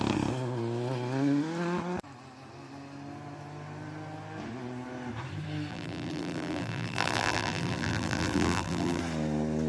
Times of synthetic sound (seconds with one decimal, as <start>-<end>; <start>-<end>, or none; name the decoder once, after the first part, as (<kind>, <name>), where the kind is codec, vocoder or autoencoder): 5.7-9.0 (vocoder, BigVGAN v2)